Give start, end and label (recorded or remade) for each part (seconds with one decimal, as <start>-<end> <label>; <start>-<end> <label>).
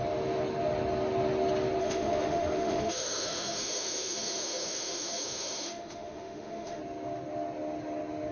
0.0-1.8 recorded; 1.8-6.8 remade; 6.8-8.3 recorded